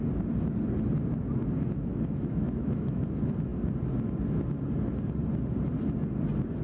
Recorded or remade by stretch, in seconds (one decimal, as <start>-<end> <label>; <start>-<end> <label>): 0.0-1.9 recorded; 1.9-3.0 remade; 3.0-6.6 recorded